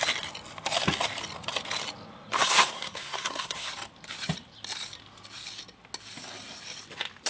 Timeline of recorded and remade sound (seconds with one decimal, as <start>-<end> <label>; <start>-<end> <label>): 0.0-2.4 recorded; 2.4-3.7 remade; 3.7-7.3 recorded